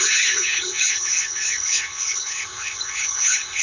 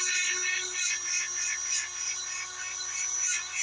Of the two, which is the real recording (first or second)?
second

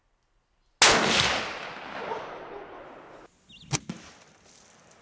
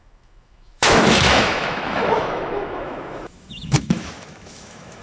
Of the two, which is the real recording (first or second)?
first